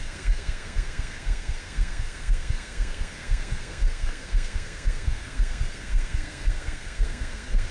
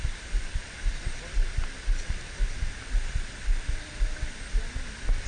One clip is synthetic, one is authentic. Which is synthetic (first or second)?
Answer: first